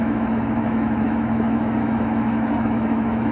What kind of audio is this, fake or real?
fake